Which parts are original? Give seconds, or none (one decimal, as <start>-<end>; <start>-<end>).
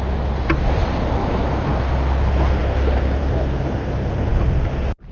0.0-1.2; 1.8-5.1